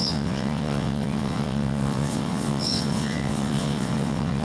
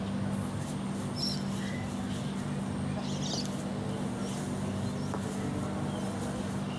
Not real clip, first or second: first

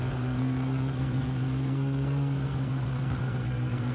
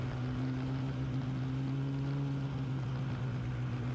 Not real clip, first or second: first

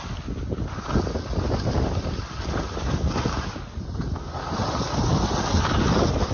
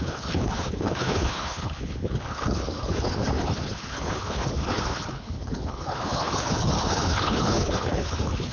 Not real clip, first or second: second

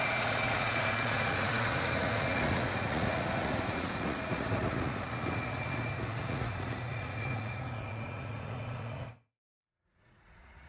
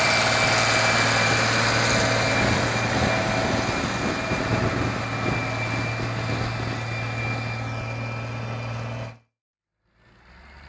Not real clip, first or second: first